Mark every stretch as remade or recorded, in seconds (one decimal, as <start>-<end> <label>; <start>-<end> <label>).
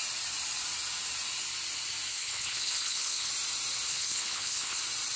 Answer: 0.0-2.1 recorded; 2.1-3.3 remade; 3.3-3.9 recorded; 3.9-4.8 remade; 4.8-5.2 recorded